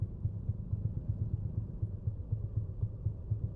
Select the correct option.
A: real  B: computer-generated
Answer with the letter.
A